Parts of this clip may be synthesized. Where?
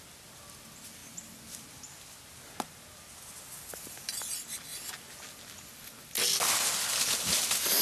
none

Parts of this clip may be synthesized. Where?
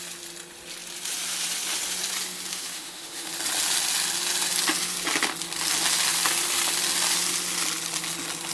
2.5-3.3 (autoencoder, DAC-VAE)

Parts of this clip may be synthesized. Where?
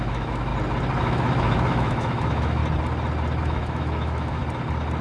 0.0-0.5 (autoencoder, DAC-VAE); 1.0-2.6; 3.4-4.4